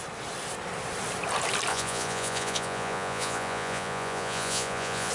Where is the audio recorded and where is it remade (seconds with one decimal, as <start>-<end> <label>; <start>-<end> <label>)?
0.0-1.7 recorded; 1.7-5.1 remade